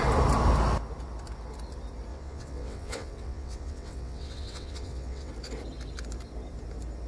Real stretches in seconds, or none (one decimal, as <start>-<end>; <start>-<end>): 0.0-2.1; 5.3-7.1